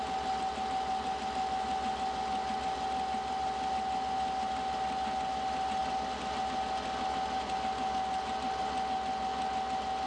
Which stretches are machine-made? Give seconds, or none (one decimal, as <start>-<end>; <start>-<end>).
none